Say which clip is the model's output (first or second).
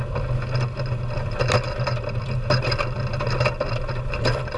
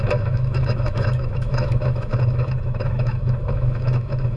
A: second